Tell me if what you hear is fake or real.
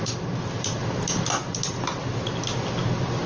real